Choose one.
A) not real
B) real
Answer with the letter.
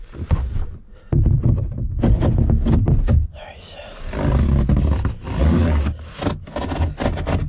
B